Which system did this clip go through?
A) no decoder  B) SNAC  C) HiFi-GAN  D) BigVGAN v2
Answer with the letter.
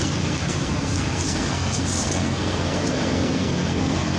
B